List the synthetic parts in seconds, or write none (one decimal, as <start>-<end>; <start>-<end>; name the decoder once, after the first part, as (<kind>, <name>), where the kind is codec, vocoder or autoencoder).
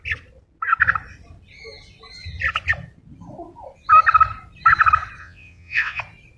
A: 5.2-6.0 (vocoder, WaveNeXt)